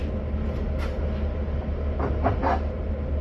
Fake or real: real